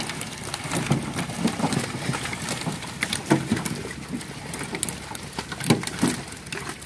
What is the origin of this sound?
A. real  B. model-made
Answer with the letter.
A